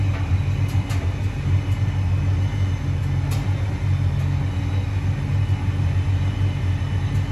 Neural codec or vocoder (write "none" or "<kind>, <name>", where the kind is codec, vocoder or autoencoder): none